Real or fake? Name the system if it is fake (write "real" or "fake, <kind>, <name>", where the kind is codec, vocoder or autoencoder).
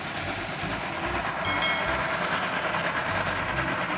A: real